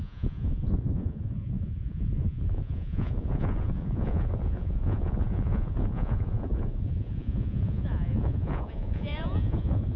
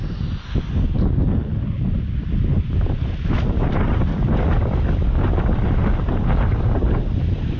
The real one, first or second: second